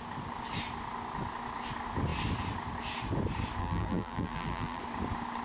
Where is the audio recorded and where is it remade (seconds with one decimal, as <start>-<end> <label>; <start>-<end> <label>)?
0.0-3.6 recorded; 3.6-4.8 remade; 4.8-5.4 recorded